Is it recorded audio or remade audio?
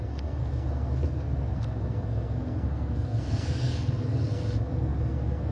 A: remade